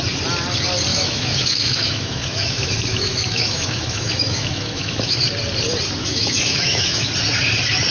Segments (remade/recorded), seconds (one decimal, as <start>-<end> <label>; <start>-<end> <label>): 0.0-0.9 recorded; 0.9-5.2 remade; 5.2-6.0 recorded; 6.0-7.1 remade; 7.1-7.9 recorded